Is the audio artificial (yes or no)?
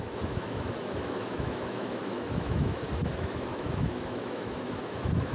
yes